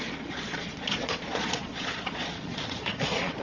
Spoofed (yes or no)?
yes